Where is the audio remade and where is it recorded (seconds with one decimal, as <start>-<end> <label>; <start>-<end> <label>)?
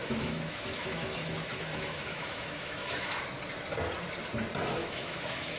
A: 0.0-3.1 remade; 3.1-4.8 recorded; 4.8-5.6 remade